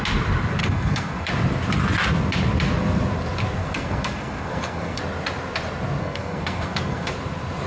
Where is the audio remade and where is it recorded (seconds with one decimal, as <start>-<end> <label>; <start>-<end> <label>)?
0.0-0.6 recorded; 0.6-1.3 remade; 1.3-3.6 recorded; 3.6-5.0 remade; 5.0-6.0 recorded; 6.0-7.1 remade; 7.1-7.7 recorded